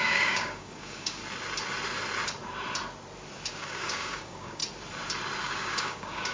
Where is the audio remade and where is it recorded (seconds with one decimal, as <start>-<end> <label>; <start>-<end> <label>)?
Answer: 0.0-1.2 remade; 1.2-3.5 recorded; 3.5-4.6 remade; 4.6-5.4 recorded; 5.4-6.3 remade